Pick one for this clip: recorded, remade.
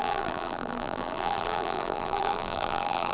remade